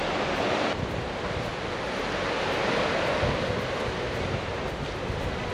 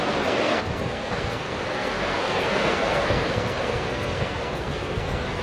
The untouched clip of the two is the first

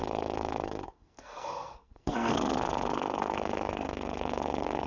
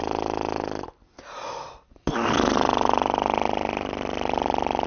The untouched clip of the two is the second